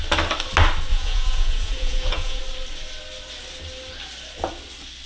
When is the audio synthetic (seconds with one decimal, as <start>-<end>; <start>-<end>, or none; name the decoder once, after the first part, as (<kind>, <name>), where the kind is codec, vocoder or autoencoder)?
0.9-2.4 (vocoder, Vocos)